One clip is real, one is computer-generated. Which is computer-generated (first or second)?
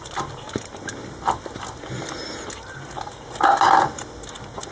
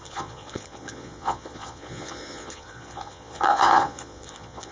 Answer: second